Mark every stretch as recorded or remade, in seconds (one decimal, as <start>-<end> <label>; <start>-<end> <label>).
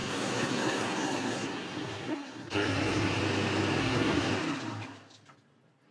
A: 0.0-3.2 remade; 3.2-3.8 recorded; 3.8-4.3 remade; 4.3-5.9 recorded